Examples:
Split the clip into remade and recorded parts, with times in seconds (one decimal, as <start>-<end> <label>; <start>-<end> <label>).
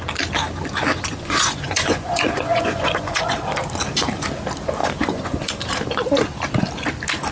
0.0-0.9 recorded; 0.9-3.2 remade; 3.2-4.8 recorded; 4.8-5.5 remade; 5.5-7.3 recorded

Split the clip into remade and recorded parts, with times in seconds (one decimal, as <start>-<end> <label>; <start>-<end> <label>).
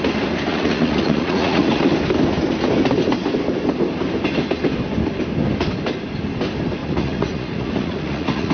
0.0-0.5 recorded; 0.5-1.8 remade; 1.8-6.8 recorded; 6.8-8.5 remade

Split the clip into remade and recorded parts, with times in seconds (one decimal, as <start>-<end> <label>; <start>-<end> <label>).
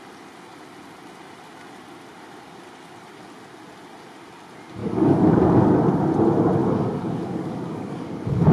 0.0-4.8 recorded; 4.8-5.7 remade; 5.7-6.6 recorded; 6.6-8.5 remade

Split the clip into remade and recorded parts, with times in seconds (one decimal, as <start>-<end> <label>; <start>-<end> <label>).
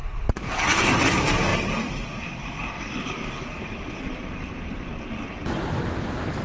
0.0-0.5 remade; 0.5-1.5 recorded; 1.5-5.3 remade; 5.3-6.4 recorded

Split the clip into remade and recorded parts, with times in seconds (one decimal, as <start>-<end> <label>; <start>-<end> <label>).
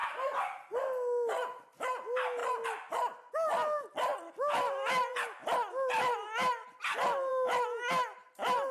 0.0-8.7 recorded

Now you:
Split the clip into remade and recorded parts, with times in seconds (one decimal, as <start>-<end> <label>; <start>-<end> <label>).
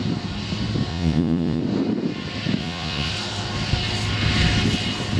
0.0-0.9 recorded; 0.9-1.6 remade; 1.6-2.6 recorded; 2.6-3.1 remade; 3.1-5.2 recorded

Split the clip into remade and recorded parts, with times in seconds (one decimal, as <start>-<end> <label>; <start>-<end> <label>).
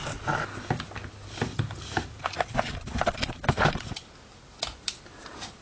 0.0-1.5 recorded; 1.5-4.4 remade; 4.4-5.6 recorded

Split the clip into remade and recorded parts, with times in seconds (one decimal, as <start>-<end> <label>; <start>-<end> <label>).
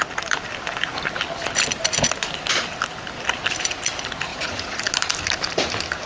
0.0-4.3 recorded; 4.3-4.9 remade; 4.9-6.1 recorded